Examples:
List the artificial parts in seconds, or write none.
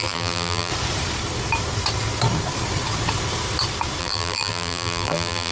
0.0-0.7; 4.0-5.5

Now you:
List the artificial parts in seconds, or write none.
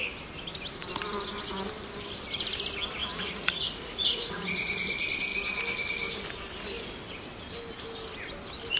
3.0-4.8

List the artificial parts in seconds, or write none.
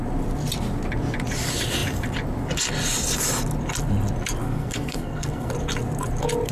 4.4-5.5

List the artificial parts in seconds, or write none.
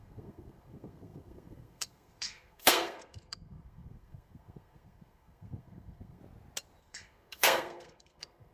0.0-6.2; 6.8-8.5